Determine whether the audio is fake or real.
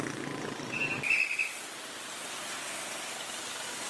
real